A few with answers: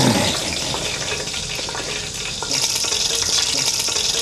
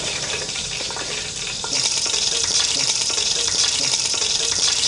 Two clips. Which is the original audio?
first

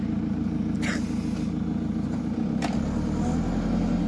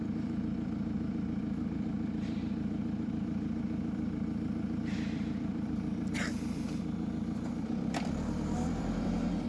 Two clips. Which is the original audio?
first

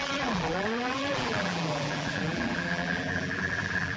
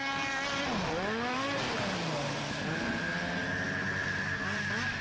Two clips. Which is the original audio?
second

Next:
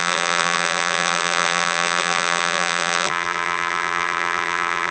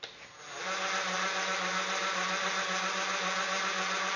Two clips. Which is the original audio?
second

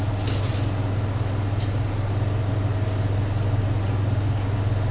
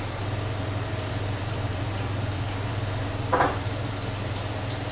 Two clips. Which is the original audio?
first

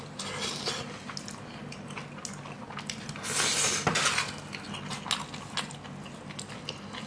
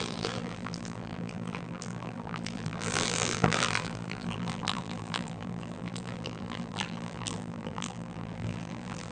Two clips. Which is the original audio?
first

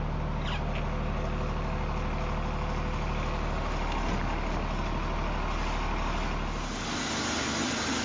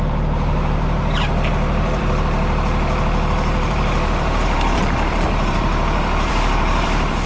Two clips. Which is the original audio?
first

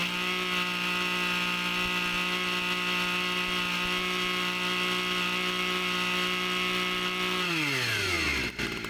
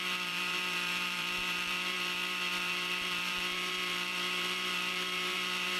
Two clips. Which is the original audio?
first